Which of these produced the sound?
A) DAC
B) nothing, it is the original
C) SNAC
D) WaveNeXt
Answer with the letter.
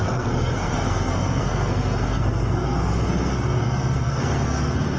C